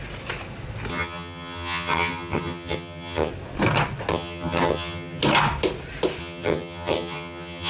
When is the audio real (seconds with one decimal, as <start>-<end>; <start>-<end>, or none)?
0.0-0.9; 3.3-4.1; 5.2-6.2